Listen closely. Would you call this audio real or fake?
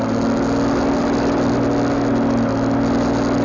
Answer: real